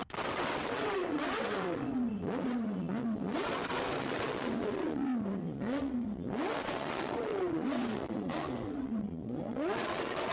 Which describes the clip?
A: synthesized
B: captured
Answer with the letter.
A